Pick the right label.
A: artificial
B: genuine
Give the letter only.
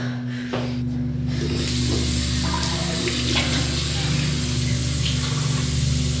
B